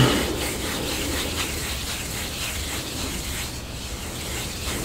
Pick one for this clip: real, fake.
real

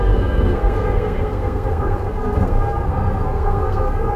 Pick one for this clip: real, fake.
fake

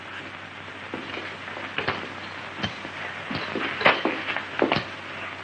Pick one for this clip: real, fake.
real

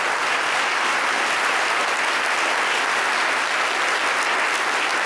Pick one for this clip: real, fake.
real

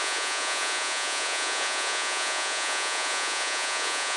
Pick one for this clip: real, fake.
fake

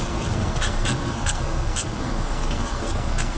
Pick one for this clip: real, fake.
fake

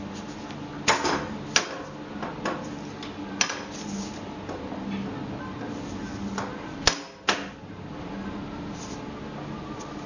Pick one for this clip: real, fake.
real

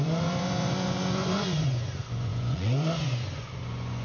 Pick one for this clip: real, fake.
fake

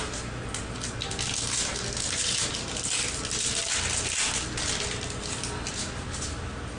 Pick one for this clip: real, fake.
real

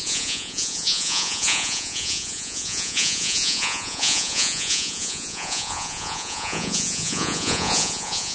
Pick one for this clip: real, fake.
fake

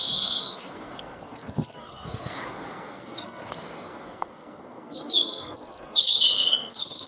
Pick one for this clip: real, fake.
fake